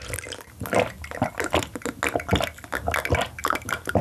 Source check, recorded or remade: recorded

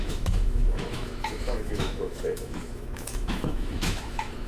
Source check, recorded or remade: remade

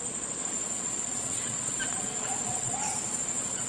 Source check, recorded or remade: remade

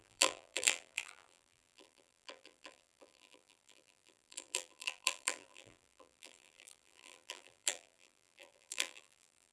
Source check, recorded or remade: remade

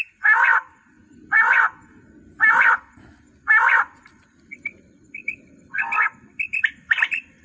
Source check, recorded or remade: recorded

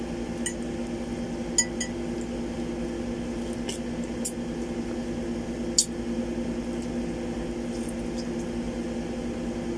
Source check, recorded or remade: recorded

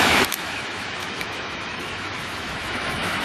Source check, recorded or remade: remade